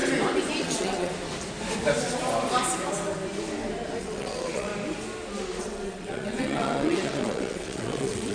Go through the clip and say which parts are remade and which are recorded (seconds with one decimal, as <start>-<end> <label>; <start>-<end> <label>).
0.0-0.6 recorded; 0.6-1.1 remade; 1.1-4.0 recorded; 4.0-4.7 remade; 4.7-5.6 recorded; 5.6-8.3 remade